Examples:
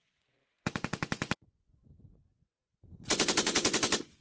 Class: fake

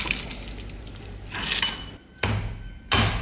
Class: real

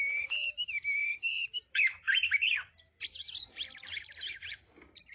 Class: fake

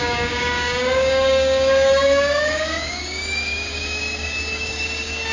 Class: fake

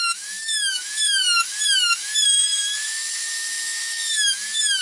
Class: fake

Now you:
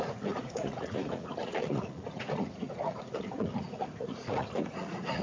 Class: fake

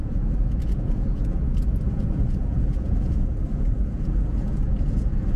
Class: fake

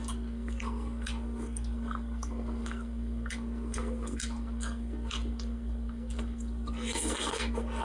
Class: fake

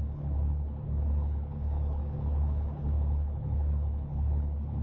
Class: fake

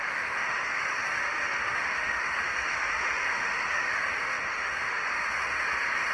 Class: fake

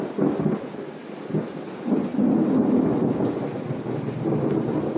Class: real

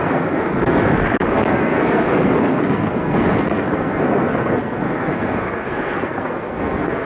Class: fake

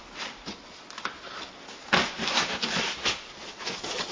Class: real